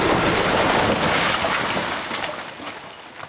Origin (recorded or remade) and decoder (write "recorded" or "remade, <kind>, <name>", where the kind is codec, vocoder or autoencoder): recorded